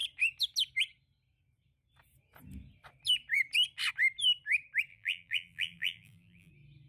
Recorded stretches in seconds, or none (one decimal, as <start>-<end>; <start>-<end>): 0.0-4.9; 6.5-6.9